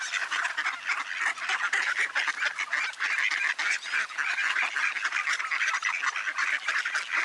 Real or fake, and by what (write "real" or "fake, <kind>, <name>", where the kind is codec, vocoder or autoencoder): real